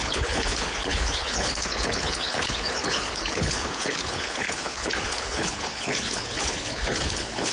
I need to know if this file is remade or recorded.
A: remade